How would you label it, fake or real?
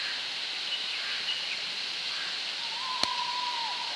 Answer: real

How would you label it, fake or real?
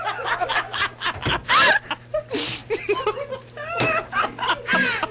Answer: real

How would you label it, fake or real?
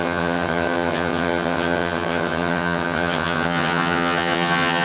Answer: fake